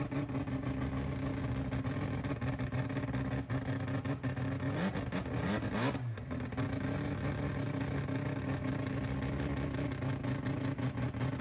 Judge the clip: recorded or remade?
recorded